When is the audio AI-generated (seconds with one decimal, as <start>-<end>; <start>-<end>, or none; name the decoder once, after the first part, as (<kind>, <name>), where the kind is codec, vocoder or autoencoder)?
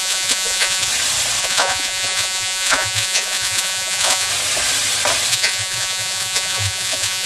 0.0-0.9 (vocoder, Vocos); 1.4-4.3; 5.3-7.3